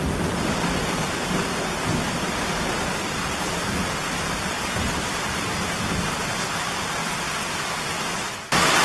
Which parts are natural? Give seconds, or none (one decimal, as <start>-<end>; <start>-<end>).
0.0-8.8